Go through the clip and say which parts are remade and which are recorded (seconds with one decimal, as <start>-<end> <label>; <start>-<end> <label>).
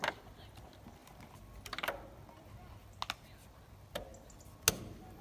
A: 0.0-5.2 recorded